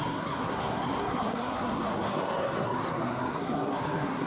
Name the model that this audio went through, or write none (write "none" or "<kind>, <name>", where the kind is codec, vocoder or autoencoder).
codec, SNAC